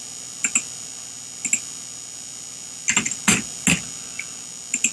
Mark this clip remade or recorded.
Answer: recorded